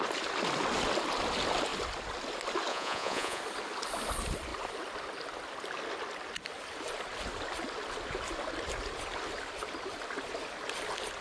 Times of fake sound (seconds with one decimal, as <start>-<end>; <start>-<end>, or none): 2.7-3.4